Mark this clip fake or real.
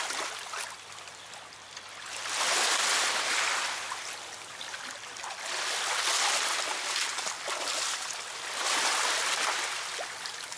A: real